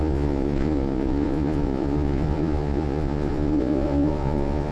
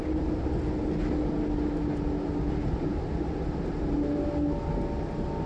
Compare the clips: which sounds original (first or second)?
second